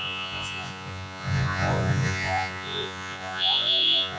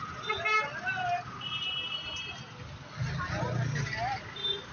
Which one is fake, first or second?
first